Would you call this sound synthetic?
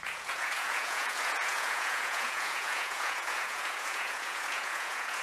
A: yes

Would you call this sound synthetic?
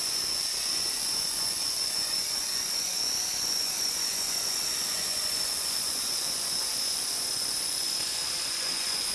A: yes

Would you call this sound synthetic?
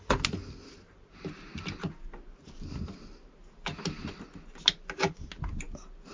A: no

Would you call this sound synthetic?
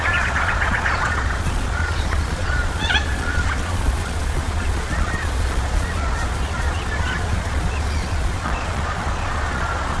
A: yes